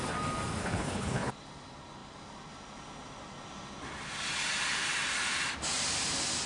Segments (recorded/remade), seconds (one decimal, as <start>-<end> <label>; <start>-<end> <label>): 0.0-0.6 recorded; 0.6-1.3 remade; 1.3-6.5 recorded